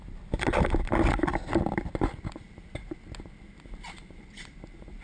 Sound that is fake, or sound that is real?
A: real